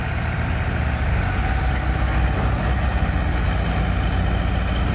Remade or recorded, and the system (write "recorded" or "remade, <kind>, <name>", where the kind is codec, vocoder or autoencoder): recorded